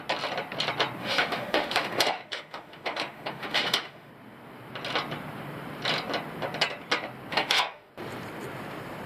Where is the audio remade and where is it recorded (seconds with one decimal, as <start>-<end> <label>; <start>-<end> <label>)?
0.0-1.0 recorded; 1.0-4.1 remade; 4.1-7.3 recorded; 7.3-7.9 remade; 7.9-9.1 recorded